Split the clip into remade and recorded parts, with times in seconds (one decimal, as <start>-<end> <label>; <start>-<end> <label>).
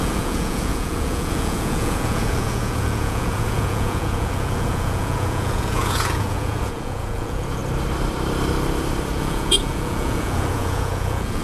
0.0-7.6 remade; 7.6-9.2 recorded; 9.2-11.4 remade